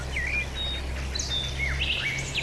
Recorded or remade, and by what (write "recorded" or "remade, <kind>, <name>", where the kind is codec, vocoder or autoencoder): recorded